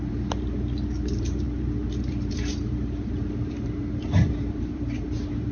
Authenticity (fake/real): fake